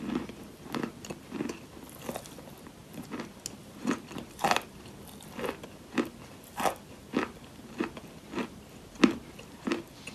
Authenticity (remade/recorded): recorded